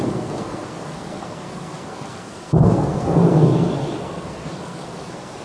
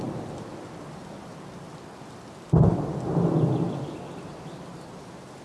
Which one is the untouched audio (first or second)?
second